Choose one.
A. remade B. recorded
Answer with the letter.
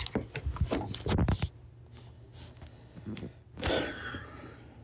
B